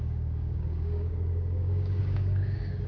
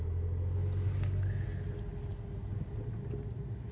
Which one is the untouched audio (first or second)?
second